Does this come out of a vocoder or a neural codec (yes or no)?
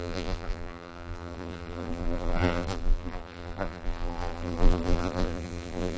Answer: yes